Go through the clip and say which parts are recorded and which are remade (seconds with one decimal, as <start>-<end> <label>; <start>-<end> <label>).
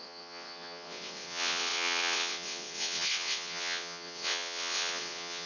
0.0-5.5 remade